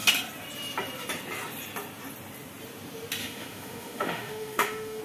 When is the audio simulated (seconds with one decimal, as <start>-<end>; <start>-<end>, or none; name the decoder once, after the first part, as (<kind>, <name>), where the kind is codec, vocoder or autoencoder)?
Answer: 3.2-5.0 (autoencoder, DAC-VAE)